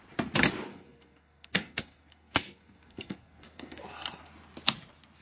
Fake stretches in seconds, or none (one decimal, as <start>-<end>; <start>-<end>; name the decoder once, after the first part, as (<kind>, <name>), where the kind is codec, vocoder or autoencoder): 0.7-3.8 (codec, SNAC)